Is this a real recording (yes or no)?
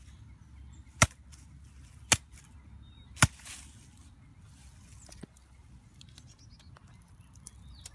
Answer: yes